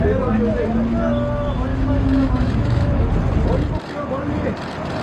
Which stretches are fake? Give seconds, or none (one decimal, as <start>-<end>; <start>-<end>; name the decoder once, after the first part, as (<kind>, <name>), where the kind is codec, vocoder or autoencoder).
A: 1.7-3.1 (autoencoder, DAC-VAE)